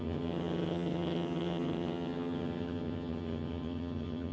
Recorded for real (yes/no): no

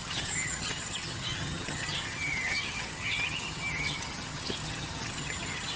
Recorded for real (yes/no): no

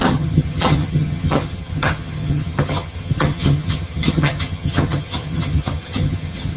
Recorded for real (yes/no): no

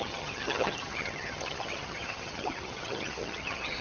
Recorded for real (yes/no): no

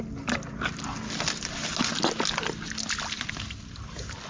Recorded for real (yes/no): yes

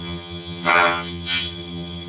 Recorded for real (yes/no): no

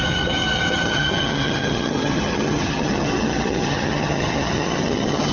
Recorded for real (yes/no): no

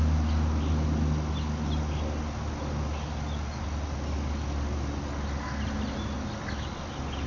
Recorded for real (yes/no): yes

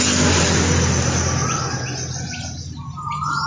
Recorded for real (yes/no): yes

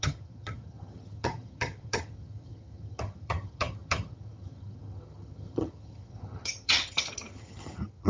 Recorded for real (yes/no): no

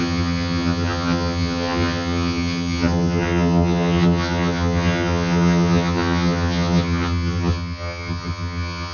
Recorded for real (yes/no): no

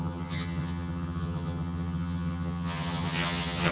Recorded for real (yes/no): no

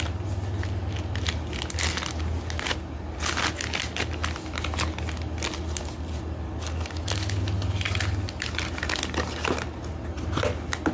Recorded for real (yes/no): yes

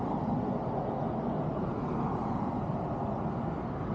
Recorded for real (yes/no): yes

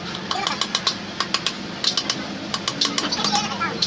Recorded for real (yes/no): yes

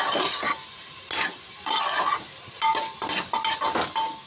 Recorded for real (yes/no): yes